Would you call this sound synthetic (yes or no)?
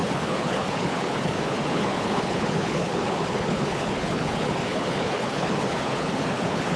yes